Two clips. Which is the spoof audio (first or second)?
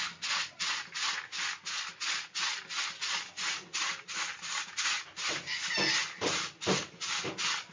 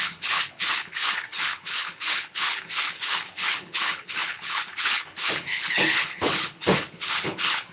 second